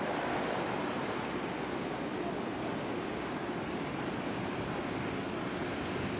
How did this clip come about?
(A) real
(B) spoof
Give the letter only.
A